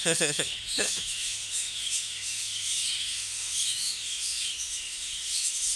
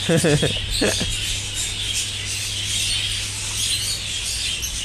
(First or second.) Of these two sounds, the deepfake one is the first